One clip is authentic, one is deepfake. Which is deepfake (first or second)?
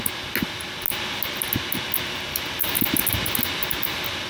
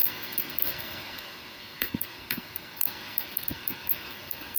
second